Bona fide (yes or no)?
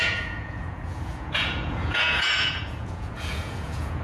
no